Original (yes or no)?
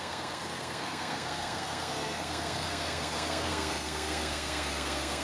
no